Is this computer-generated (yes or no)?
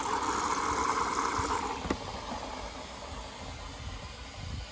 no